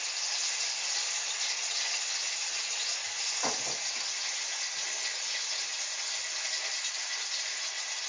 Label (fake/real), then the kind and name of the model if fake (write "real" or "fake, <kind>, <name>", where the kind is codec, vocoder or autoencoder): real